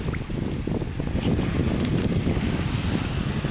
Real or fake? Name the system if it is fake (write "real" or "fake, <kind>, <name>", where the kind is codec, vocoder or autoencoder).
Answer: real